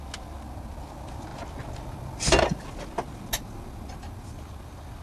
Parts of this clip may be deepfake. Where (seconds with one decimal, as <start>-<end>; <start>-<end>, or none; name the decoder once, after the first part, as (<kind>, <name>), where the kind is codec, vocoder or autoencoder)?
none